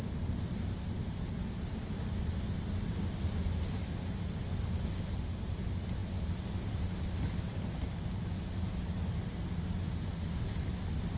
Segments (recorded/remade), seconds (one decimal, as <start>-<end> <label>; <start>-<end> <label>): 0.0-11.2 recorded